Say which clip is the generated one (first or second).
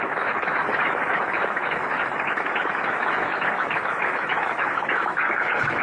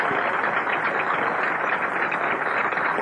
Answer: first